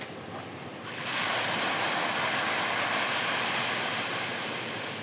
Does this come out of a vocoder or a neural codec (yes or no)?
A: no